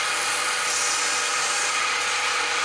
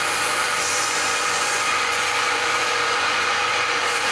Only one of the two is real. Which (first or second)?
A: first